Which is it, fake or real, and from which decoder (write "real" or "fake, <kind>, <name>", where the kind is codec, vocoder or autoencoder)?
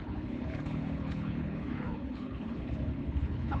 fake, codec, HILCodec